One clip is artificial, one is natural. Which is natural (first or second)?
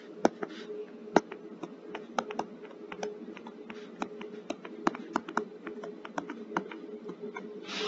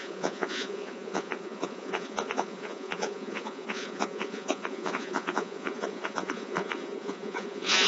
first